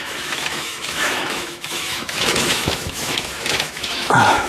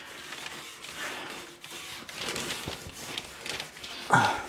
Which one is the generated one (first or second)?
first